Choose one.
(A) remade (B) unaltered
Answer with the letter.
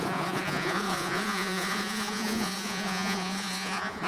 A